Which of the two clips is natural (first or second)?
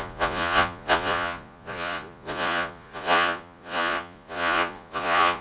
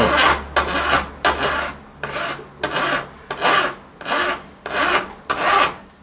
second